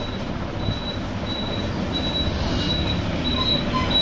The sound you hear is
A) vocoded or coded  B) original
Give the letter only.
B